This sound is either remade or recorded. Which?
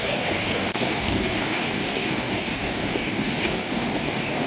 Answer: remade